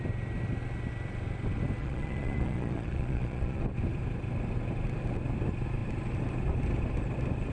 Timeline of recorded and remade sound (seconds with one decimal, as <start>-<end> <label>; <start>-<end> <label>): 0.0-1.8 recorded; 1.8-3.6 remade; 3.6-7.5 recorded